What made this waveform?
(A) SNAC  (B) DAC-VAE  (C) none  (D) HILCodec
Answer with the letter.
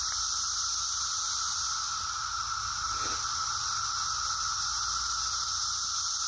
C